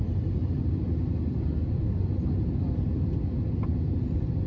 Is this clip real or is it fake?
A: real